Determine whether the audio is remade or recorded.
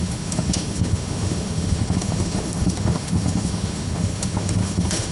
remade